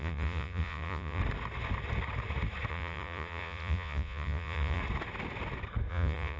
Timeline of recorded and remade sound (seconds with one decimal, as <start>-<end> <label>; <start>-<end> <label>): 0.0-1.2 remade; 1.2-2.7 recorded; 2.7-4.8 remade; 4.8-5.9 recorded; 5.9-6.4 remade